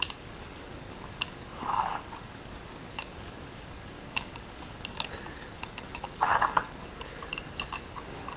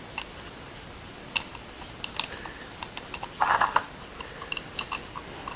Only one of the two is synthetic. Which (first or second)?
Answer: first